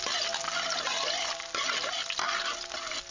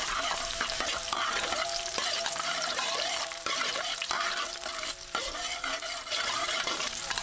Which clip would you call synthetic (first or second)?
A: second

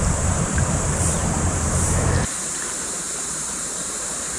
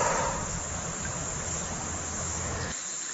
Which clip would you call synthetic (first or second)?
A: first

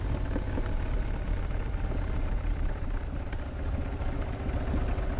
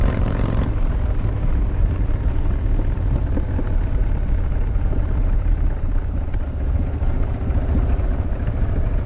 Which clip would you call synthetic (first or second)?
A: second